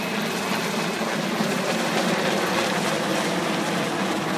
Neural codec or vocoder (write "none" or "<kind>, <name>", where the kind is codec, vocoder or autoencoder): none